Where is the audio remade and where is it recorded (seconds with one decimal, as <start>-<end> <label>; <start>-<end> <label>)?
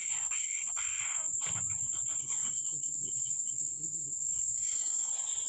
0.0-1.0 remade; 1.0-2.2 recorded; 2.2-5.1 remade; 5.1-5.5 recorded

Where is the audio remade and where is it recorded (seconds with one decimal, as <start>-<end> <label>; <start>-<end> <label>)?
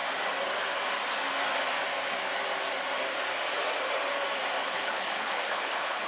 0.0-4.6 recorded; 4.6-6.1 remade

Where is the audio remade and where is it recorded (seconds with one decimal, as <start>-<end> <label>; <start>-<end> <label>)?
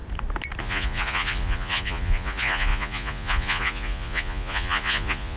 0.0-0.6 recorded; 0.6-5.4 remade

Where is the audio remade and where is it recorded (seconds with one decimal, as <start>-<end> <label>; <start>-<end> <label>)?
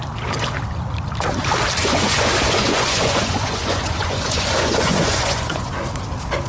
0.0-1.8 recorded; 1.8-5.7 remade; 5.7-6.5 recorded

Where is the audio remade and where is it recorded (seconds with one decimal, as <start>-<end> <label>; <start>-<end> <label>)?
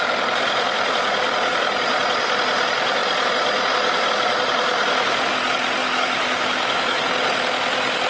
0.0-5.8 recorded; 5.8-7.0 remade; 7.0-8.1 recorded